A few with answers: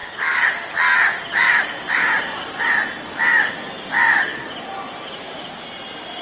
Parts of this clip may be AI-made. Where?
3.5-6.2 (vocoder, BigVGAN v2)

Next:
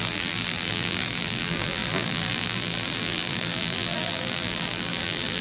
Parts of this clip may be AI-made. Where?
0.0-5.4 (vocoder, BigVGAN v2)

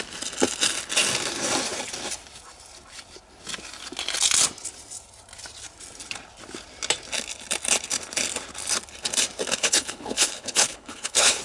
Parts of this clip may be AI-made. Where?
9.6-11.4 (codec, HILCodec)

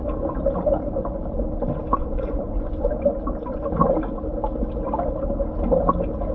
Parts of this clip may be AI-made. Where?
2.0-2.9 (vocoder, Vocos)

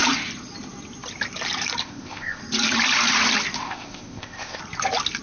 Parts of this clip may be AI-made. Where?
1.8-2.4 (codec, ZipCodec); 3.6-4.6

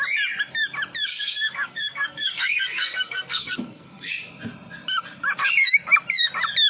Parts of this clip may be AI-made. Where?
1.1-4.1 (codec, SNAC)

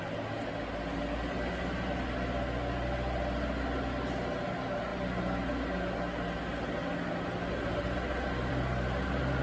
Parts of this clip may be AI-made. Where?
none